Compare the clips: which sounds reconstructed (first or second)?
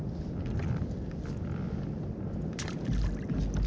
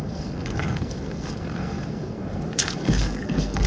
second